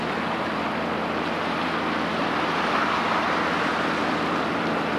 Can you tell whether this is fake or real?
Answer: fake